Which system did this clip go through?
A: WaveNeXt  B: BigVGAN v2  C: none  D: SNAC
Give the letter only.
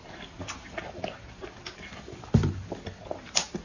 C